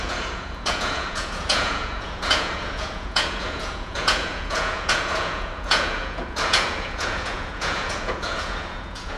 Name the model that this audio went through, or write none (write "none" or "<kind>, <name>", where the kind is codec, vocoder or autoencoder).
vocoder, Vocos